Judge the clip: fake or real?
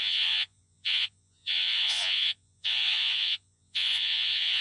fake